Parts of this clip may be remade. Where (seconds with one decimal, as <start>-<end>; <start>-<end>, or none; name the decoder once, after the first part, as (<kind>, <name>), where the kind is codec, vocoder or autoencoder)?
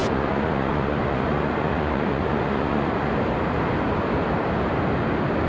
0.0-3.1 (vocoder, Vocos)